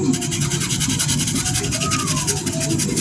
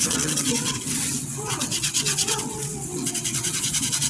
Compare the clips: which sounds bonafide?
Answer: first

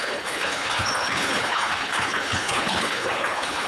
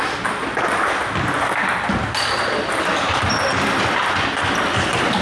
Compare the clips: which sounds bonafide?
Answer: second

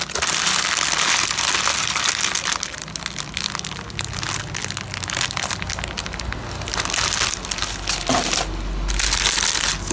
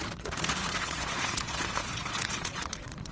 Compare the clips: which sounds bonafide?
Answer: first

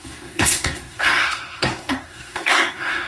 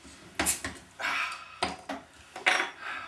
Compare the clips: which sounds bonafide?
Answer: second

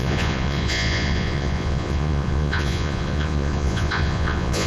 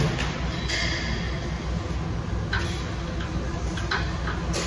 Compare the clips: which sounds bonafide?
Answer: second